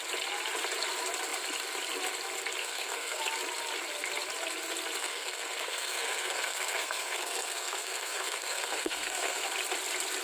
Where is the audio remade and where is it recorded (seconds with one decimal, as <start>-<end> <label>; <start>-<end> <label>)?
0.0-2.6 recorded; 2.6-3.2 remade; 3.2-5.0 recorded; 5.0-9.5 remade; 9.5-10.2 recorded